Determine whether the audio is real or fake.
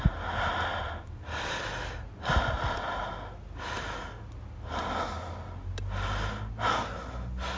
real